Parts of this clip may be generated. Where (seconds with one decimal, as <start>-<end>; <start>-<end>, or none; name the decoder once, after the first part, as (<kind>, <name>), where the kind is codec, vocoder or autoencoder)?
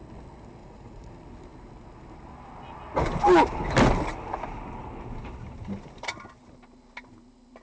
0.6-1.1 (vocoder, Vocos)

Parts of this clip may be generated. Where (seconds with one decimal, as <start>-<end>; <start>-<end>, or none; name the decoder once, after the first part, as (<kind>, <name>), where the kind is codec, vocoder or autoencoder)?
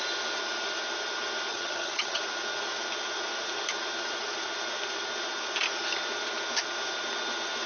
1.5-2.2 (vocoder, HiFi-GAN)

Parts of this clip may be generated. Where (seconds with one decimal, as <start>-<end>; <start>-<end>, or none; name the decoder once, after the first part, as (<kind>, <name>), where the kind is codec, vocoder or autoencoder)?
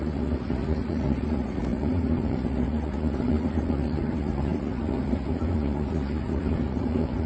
0.0-7.3 (vocoder, Vocos)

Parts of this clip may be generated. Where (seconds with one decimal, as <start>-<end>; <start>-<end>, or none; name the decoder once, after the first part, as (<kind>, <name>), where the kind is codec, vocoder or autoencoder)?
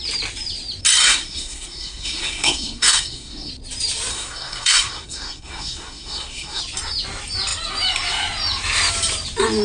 1.1-3.5 (codec, SNAC); 4.1-6.6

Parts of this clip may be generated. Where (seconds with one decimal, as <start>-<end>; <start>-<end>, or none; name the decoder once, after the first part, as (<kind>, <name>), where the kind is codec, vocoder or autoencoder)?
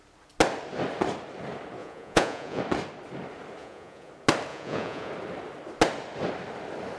1.8-2.6 (vocoder, Vocos); 3.6-4.1; 4.5-5.1